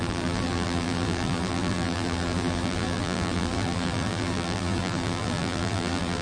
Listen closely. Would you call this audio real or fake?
fake